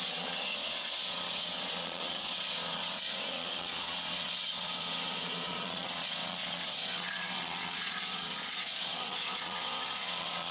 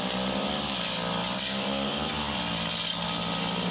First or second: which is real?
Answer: second